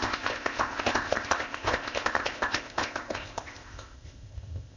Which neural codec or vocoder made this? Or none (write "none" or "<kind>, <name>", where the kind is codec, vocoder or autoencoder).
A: codec, ZipCodec